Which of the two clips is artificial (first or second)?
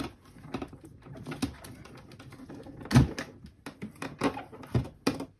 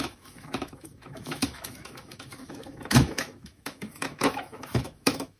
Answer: second